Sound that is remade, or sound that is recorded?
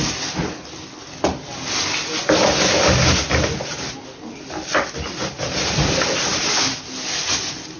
recorded